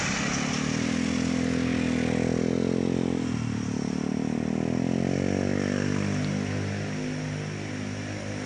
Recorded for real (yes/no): yes